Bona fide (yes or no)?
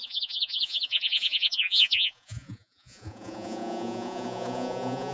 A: no